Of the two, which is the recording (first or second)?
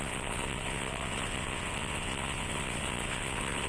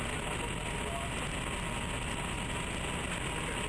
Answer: second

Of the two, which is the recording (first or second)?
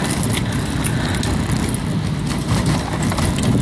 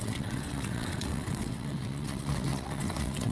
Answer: first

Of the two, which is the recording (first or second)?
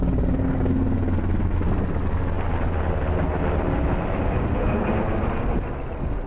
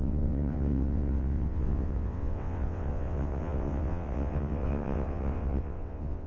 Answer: first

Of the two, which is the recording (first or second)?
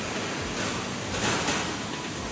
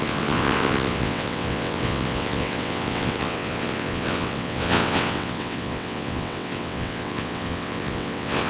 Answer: first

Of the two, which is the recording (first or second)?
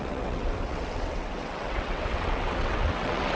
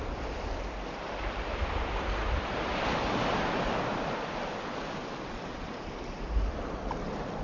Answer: second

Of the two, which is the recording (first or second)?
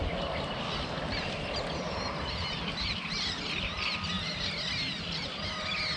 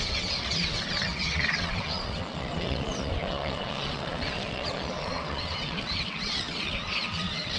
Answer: first